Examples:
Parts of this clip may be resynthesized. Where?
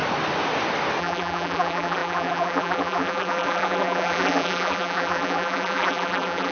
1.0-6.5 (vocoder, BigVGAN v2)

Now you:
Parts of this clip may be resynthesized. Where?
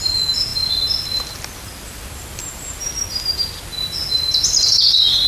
none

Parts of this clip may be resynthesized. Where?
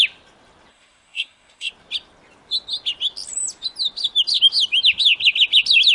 0.7-1.7 (codec, SNAC)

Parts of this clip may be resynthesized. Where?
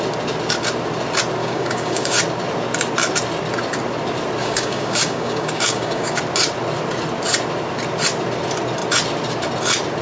1.4-2.2 (codec, DAC); 4.4-6.2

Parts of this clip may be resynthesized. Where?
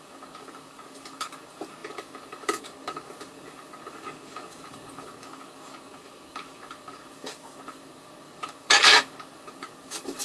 0.0-10.2 (codec, DAC)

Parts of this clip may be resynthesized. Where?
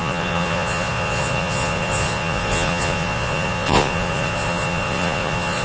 0.0-5.6 (vocoder, Vocos)